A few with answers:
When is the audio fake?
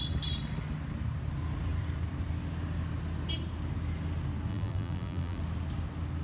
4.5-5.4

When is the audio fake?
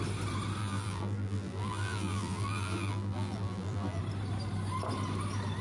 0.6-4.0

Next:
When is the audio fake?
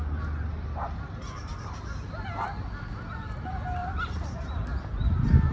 1.5-3.4; 3.8-5.5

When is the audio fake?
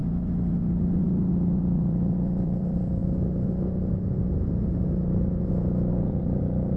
0.0-3.0; 5.9-6.8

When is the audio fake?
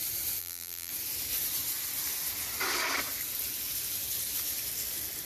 0.4-0.9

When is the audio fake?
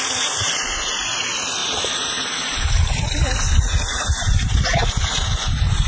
1.6-4.6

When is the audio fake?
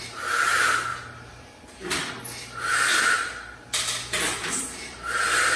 0.9-2.1; 4.4-5.6